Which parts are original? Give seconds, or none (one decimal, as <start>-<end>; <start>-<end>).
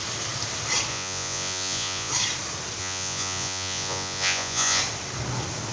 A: 0.0-0.9; 2.1-2.8; 4.8-5.7